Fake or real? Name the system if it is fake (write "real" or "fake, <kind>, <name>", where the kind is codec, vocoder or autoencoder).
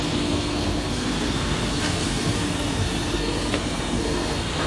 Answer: fake, codec, SNAC